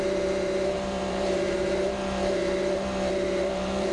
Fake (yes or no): yes